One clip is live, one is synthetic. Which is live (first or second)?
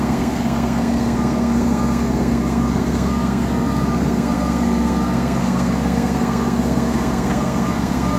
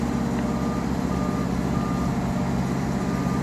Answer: second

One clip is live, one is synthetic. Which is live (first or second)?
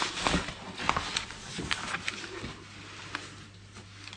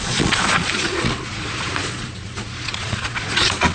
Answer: first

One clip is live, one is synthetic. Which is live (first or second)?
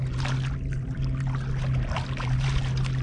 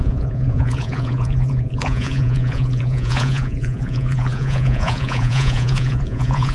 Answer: first